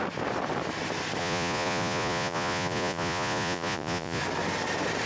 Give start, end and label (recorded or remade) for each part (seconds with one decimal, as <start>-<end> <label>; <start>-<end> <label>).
0.0-1.2 recorded; 1.2-4.2 remade; 4.2-5.1 recorded